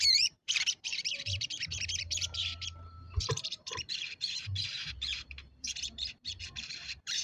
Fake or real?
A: fake